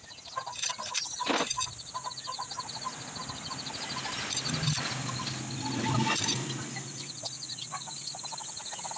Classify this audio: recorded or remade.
recorded